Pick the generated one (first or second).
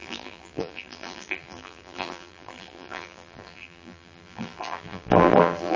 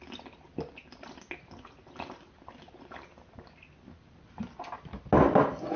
first